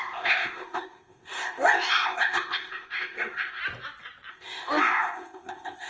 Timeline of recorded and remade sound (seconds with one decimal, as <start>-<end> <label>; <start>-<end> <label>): 0.0-3.6 remade; 3.6-4.3 recorded; 4.3-5.9 remade